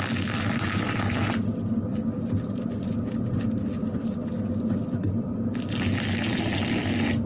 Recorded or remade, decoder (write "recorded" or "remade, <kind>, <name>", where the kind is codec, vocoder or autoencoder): recorded